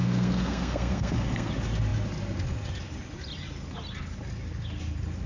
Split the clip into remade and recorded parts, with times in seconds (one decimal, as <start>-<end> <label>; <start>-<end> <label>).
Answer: 0.0-1.5 remade; 1.5-5.3 recorded